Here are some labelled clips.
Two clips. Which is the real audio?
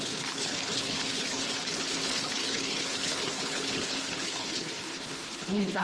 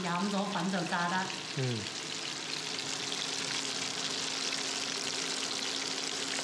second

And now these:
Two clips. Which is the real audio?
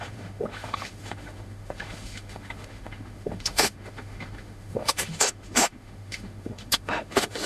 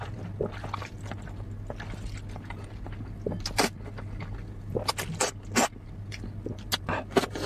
second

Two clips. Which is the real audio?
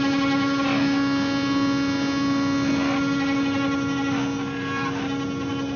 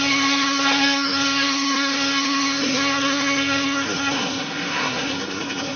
first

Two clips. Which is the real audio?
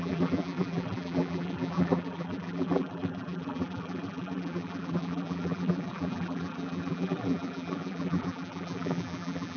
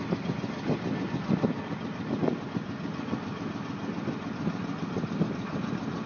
second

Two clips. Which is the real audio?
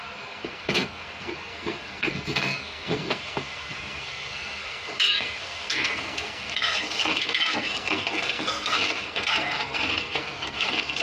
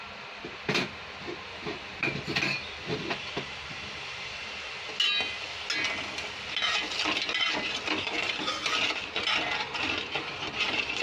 second